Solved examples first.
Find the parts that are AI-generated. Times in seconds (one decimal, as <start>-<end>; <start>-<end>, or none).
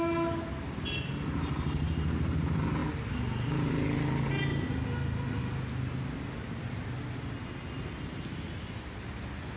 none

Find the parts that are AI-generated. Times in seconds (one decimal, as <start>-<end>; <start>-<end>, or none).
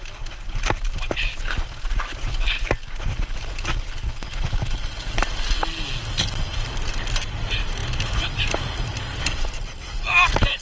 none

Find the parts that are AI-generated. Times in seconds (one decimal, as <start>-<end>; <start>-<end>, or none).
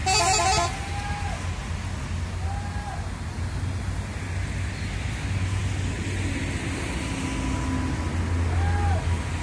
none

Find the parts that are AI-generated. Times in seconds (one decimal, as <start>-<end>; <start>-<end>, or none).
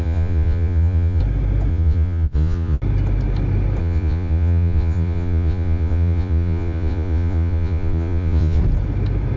0.0-1.2; 1.7-2.8; 3.8-8.6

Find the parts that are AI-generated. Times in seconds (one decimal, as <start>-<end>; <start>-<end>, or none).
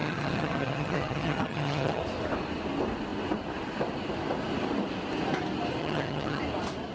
0.0-2.0; 5.8-6.4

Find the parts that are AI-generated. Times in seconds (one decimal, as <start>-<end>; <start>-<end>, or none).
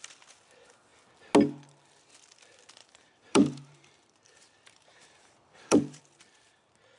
2.8-6.0